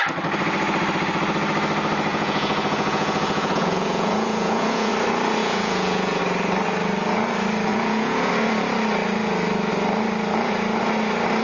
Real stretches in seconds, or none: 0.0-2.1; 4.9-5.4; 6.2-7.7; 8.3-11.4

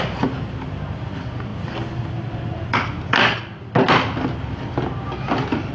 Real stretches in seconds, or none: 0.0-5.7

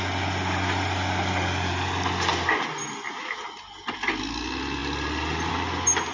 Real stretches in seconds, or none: 0.0-6.1